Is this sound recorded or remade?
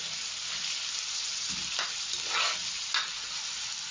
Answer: recorded